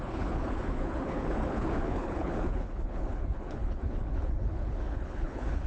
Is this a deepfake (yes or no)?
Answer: yes